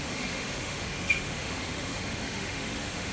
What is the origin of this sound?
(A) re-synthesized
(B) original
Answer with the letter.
A